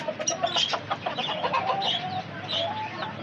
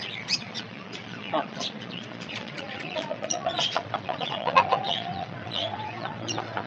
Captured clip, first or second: first